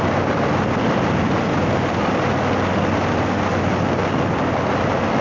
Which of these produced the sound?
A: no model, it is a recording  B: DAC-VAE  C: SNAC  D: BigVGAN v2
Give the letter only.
A